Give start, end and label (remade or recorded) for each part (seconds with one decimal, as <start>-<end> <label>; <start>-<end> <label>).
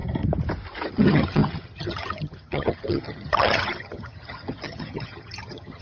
0.0-0.9 recorded; 0.9-5.8 remade